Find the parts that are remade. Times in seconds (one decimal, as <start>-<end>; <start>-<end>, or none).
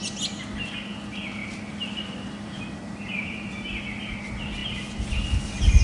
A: 1.4-3.7